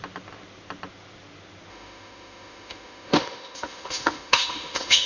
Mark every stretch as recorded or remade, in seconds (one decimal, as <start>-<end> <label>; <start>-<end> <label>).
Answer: 0.0-1.7 recorded; 1.7-5.1 remade